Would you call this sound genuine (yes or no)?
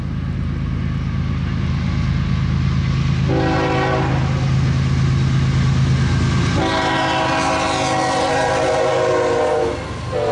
yes